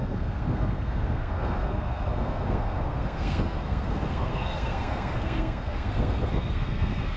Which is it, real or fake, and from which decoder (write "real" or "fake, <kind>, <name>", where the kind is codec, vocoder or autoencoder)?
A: fake, codec, SNAC